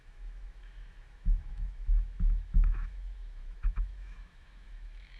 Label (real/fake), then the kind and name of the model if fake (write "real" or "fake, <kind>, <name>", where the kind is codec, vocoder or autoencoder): fake, autoencoder, DAC-VAE